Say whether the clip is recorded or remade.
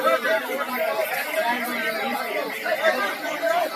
recorded